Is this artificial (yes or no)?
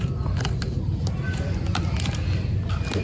no